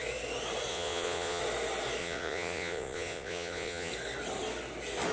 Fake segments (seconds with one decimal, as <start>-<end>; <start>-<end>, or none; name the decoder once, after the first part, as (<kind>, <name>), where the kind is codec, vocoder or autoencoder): 0.7-1.4 (vocoder, Vocos); 2.0-3.9